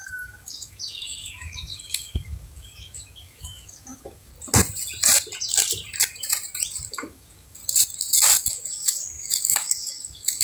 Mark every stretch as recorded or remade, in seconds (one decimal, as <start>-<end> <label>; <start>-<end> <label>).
0.0-4.3 remade; 4.3-6.9 recorded; 6.9-7.6 remade; 7.6-8.5 recorded; 8.5-10.4 remade